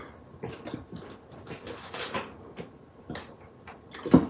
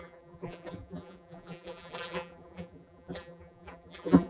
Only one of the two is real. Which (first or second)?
first